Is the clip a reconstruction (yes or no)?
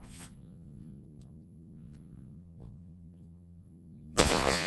yes